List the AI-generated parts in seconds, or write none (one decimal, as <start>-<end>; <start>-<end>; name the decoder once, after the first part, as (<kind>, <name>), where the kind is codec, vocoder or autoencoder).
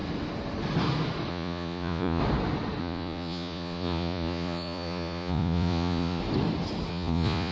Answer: 1.3-2.2 (vocoder, Vocos); 2.8-6.2; 6.9-7.5